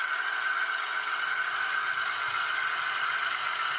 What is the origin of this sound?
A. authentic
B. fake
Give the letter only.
A